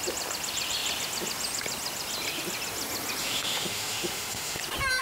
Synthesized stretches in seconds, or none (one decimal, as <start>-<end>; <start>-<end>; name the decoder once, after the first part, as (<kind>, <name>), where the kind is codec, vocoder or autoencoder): 3.2-4.6 (autoencoder, DAC-VAE)